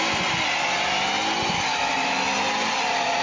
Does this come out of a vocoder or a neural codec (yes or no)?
no